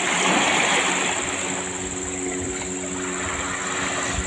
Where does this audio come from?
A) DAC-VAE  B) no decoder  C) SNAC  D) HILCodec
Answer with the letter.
B